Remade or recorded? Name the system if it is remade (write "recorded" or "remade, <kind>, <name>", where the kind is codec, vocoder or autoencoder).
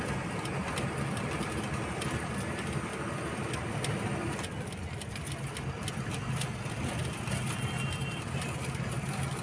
recorded